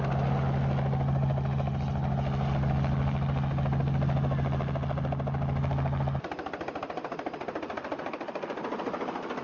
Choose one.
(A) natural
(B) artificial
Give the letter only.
A